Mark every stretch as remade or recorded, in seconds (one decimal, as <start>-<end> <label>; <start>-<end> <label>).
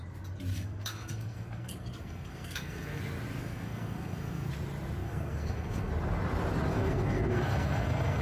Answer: 0.0-0.5 recorded; 0.5-3.0 remade; 3.0-3.4 recorded; 3.4-4.5 remade; 4.5-5.0 recorded; 5.0-5.9 remade; 5.9-6.7 recorded; 6.7-8.2 remade